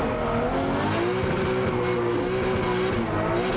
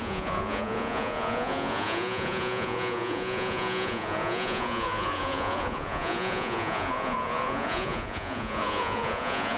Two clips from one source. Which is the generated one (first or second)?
second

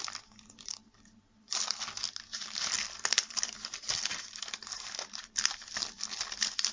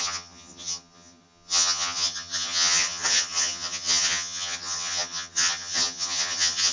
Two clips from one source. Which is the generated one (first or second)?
second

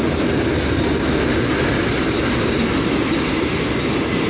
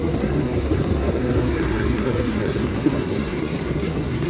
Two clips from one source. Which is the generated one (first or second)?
second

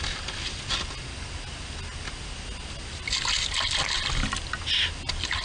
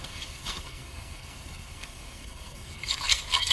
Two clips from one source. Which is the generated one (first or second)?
second